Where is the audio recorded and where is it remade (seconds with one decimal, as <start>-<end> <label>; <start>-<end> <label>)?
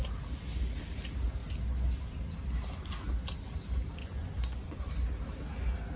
0.0-4.0 recorded; 4.0-4.9 remade; 4.9-6.0 recorded